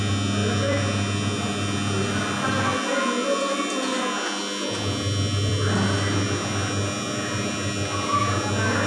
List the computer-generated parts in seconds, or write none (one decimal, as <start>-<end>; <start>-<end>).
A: none

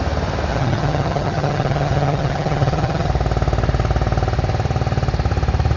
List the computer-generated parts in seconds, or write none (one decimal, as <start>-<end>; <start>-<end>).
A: 0.5-3.1